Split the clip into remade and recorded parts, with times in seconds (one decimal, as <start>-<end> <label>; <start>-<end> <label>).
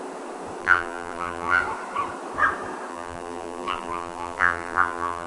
0.0-0.6 recorded; 0.6-1.6 remade; 1.6-2.9 recorded; 2.9-5.3 remade